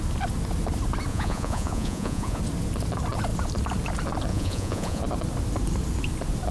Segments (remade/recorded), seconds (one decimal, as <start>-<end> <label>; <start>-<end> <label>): 0.0-1.1 recorded; 1.1-2.4 remade; 2.4-4.3 recorded; 4.3-5.0 remade; 5.0-6.5 recorded